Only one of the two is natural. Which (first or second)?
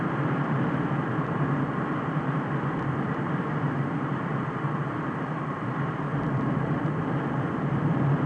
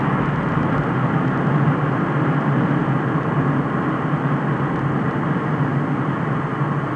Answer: second